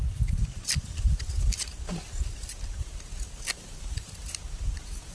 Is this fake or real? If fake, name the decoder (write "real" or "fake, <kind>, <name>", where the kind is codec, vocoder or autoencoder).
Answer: real